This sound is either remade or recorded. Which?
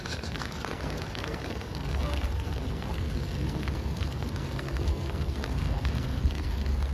remade